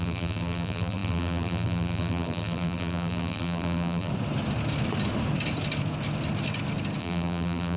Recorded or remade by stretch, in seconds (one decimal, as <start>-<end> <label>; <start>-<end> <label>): 0.0-4.1 remade; 4.1-7.0 recorded; 7.0-7.8 remade